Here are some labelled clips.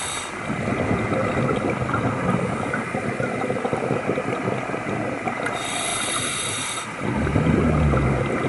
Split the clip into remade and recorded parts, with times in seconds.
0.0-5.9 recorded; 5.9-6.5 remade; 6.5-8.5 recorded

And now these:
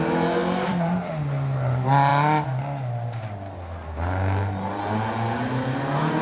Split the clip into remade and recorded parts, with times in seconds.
0.0-0.4 recorded; 0.4-1.1 remade; 1.1-6.2 recorded

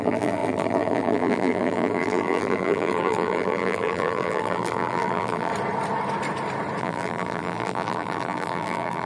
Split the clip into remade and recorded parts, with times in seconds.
0.0-5.5 remade; 5.5-6.8 recorded; 6.8-9.1 remade

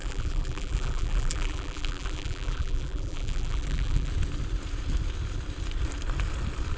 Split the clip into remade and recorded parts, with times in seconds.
0.0-4.1 remade; 4.1-6.8 recorded

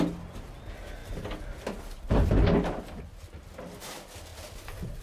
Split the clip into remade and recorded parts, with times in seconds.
0.0-5.0 recorded

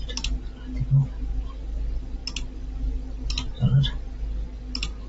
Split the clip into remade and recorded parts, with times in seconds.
0.0-5.1 recorded

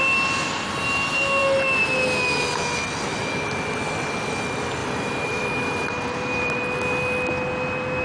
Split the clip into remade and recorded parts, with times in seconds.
0.0-4.8 recorded; 4.8-6.6 remade; 6.6-8.0 recorded

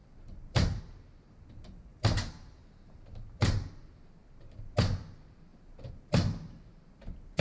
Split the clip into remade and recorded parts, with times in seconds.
0.0-0.8 remade; 0.8-1.9 recorded; 1.9-3.7 remade; 3.7-5.5 recorded; 5.5-7.4 remade